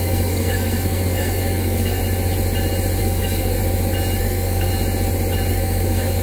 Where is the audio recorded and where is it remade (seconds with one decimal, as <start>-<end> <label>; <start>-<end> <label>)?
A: 0.0-2.0 remade; 2.0-3.0 recorded; 3.0-3.6 remade; 3.6-4.2 recorded; 4.2-4.7 remade; 4.7-5.5 recorded; 5.5-6.2 remade